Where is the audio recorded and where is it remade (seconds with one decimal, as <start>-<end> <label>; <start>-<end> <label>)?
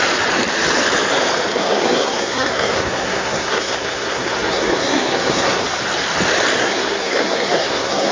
0.0-1.5 recorded; 1.5-5.6 remade; 5.6-6.6 recorded; 6.6-8.1 remade